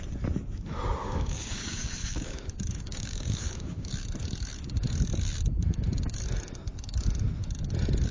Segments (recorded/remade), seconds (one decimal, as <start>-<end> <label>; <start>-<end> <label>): 0.0-1.0 recorded; 1.0-3.9 remade; 3.9-8.1 recorded

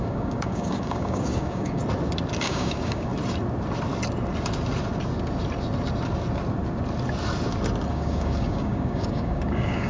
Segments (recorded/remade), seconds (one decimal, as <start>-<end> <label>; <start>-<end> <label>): 0.0-1.8 remade; 1.8-2.4 recorded; 2.4-3.1 remade; 3.1-7.9 recorded; 7.9-9.9 remade

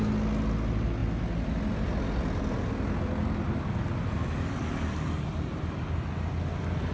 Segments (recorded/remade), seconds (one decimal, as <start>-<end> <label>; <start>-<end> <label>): 0.0-6.9 recorded

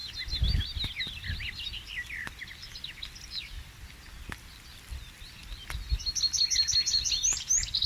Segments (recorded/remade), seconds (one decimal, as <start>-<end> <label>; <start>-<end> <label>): 0.0-7.9 recorded